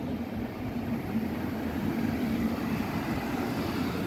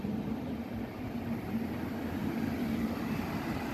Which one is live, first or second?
second